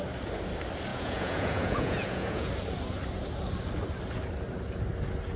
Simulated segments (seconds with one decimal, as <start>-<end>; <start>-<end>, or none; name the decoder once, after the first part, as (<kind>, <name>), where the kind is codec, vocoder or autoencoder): 0.9-2.5 (vocoder, Vocos)